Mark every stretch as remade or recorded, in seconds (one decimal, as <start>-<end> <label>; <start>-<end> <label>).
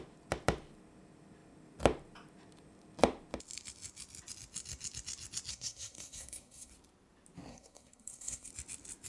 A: 0.0-5.5 recorded; 5.5-6.7 remade; 6.7-7.5 recorded; 7.5-8.5 remade; 8.5-9.1 recorded